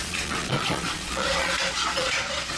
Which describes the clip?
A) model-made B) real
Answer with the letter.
A